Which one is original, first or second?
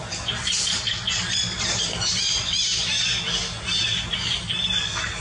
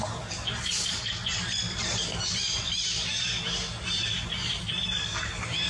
first